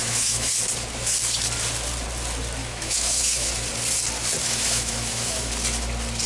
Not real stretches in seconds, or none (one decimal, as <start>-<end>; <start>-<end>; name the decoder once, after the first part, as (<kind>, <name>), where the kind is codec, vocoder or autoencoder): 0.0-0.5 (autoencoder, DAC-VAE); 2.6-3.5; 4.4-5.5

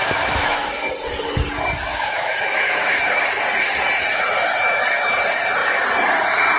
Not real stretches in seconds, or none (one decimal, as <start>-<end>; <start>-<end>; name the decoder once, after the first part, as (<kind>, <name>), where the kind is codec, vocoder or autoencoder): 0.0-0.7 (autoencoder, DAC-VAE); 1.9-3.2

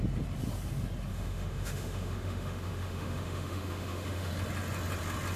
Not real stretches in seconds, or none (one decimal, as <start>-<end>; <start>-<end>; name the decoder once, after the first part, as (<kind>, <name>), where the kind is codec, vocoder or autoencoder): 1.1-4.3 (autoencoder, DAC-VAE)